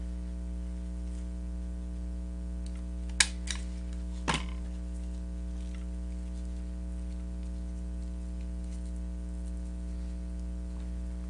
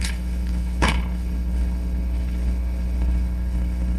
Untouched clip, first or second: first